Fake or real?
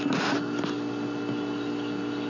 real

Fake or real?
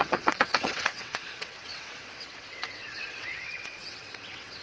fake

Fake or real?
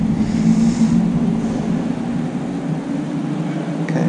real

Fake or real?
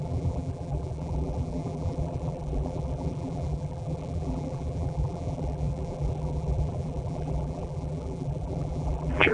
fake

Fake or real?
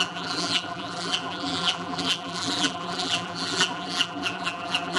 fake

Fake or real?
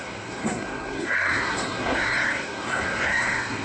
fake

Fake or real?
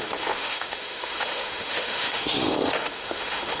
fake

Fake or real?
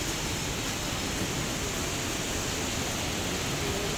real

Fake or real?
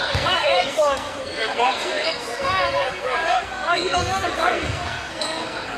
fake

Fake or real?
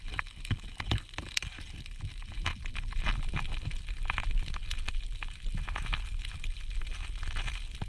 real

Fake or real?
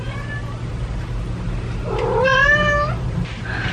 real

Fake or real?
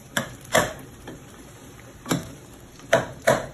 fake